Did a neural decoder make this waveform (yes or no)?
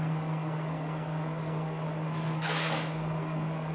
yes